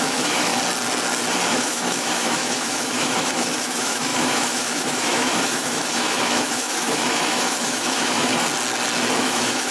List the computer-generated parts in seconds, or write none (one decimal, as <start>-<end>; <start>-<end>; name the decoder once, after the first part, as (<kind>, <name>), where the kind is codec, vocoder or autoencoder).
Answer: 0.0-0.5 (autoencoder, DAC-VAE); 1.5-8.3; 9.2-9.7